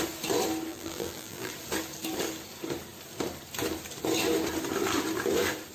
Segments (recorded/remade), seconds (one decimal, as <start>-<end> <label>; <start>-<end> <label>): 0.0-0.7 recorded; 0.7-1.5 remade; 1.5-5.7 recorded